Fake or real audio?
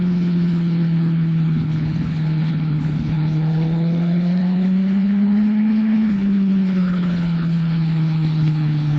fake